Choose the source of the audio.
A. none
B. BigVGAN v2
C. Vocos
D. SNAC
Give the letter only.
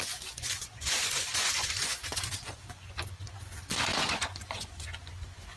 C